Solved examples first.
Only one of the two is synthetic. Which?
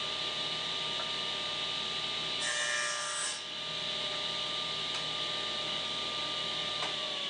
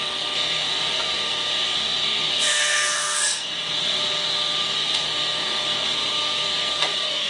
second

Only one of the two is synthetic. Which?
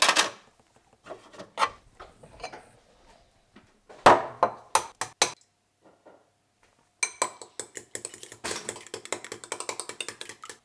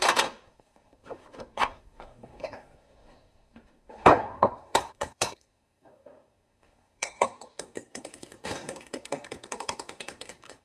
second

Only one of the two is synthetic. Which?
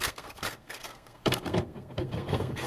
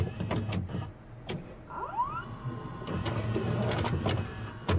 first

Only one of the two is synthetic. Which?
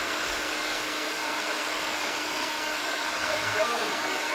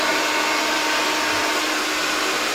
first